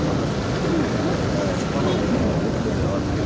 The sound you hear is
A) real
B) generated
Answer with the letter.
A